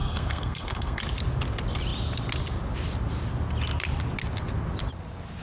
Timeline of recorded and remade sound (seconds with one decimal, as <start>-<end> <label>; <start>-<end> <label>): 0.0-1.0 remade; 1.0-5.4 recorded